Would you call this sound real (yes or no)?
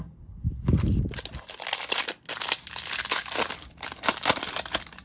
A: yes